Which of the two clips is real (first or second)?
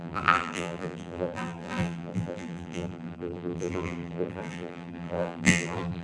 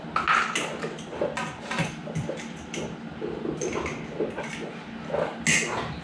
second